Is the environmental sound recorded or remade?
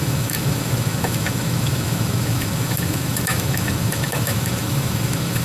remade